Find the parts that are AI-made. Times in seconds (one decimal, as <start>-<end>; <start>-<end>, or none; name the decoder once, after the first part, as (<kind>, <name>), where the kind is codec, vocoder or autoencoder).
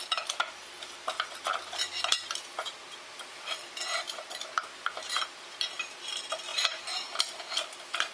6.5-7.4 (vocoder, BigVGAN v2)